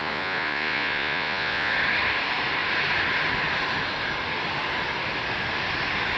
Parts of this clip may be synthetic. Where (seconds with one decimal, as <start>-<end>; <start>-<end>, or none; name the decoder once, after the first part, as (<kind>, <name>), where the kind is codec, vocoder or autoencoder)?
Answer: 0.0-1.7 (vocoder, Vocos)

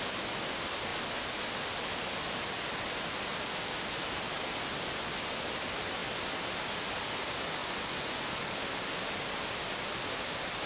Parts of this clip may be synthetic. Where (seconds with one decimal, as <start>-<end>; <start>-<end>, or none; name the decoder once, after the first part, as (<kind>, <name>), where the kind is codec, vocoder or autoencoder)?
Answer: 7.6-8.2 (vocoder, Vocos)

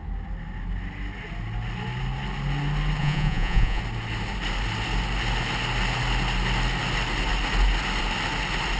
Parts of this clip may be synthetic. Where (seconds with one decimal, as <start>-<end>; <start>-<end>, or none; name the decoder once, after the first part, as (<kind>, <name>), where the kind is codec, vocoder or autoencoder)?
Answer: 3.0-3.8 (vocoder, Vocos)

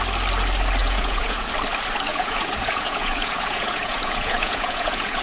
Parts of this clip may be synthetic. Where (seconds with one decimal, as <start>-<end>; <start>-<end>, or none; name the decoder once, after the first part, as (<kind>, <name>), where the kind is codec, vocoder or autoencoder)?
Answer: 0.8-1.5 (vocoder, Vocos); 2.1-5.2